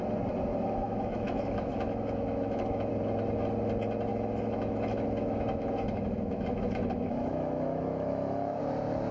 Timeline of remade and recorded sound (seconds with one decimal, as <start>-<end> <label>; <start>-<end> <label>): 0.0-0.5 recorded; 0.5-2.9 remade; 2.9-4.1 recorded; 4.1-8.6 remade; 8.6-9.1 recorded